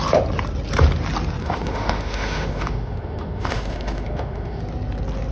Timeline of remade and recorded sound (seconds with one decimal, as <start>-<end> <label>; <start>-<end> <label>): 0.0-1.4 recorded; 1.4-4.6 remade; 4.6-5.3 recorded